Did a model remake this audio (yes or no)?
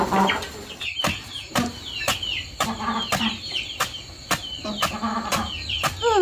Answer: no